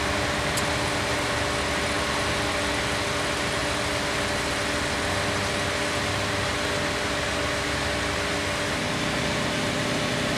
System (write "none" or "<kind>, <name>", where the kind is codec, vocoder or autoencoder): none